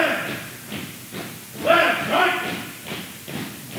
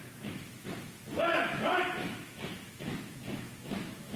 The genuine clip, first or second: first